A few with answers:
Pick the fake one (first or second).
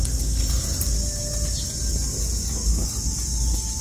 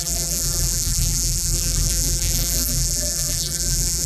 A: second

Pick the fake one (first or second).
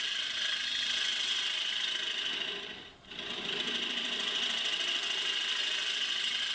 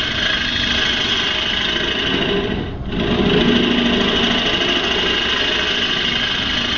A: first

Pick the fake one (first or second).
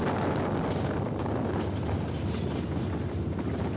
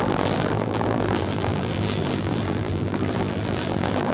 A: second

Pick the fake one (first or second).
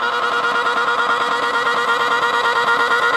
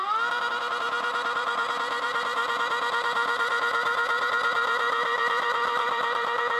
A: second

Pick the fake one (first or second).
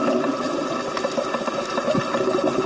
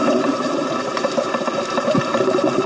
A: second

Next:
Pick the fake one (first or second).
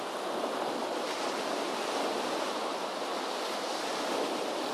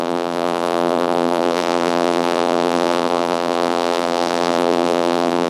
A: second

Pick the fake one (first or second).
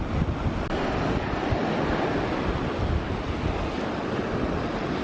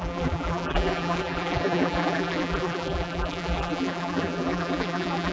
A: second